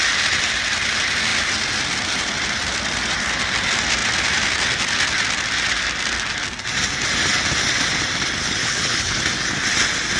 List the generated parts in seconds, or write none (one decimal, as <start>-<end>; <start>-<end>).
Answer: 8.6-9.2